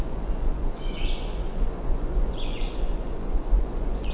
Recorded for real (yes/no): no